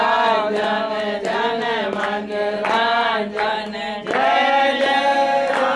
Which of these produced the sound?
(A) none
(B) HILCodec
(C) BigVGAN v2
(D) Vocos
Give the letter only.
A